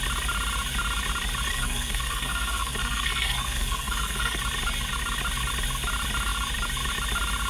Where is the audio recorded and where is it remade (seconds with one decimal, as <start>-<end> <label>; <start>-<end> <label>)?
0.0-1.5 recorded; 1.5-4.4 remade; 4.4-7.5 recorded